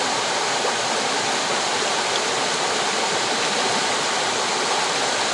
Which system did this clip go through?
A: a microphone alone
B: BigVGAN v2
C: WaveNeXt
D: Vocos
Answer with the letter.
A